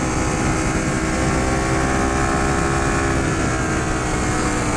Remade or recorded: recorded